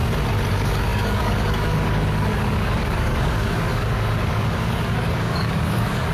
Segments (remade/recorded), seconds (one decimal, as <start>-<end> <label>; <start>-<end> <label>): 0.0-0.5 recorded; 0.5-6.1 remade